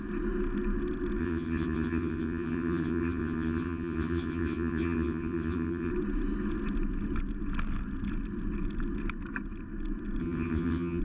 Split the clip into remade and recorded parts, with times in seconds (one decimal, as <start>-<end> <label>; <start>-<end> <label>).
0.0-1.2 recorded; 1.2-5.9 remade; 5.9-10.2 recorded; 10.2-11.0 remade